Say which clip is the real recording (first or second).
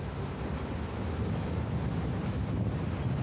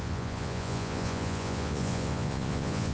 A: first